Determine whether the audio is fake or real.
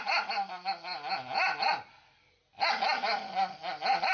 real